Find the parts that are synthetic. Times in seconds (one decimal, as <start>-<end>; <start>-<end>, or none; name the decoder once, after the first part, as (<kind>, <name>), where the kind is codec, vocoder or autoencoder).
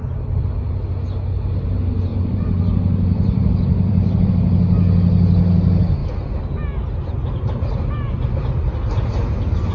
2.1-4.3 (vocoder, BigVGAN v2)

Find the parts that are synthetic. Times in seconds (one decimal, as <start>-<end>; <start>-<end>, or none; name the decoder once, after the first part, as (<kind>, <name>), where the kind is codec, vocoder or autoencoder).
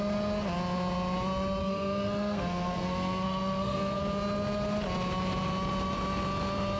1.6-4.0 (codec, SNAC)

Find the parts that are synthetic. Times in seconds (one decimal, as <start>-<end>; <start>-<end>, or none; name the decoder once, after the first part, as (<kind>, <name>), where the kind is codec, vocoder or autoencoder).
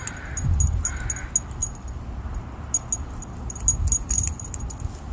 none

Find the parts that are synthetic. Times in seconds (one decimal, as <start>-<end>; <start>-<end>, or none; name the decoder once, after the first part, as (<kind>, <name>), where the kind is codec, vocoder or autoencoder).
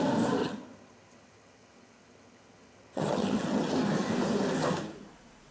0.4-3.7 (vocoder, HiFi-GAN)